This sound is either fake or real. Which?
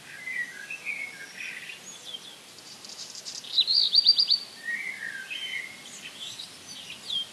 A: real